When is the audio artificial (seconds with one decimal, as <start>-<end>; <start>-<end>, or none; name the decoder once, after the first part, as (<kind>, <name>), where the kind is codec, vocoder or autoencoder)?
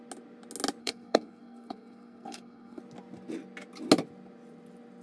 0.8-2.8 (codec, SNAC)